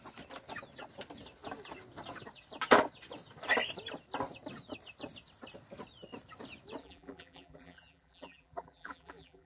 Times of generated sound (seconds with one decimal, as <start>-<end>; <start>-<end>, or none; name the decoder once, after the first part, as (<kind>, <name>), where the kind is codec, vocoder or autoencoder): 6.8-9.5 (vocoder, BigVGAN v2)